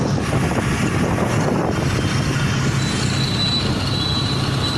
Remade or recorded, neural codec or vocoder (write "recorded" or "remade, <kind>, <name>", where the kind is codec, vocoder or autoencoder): recorded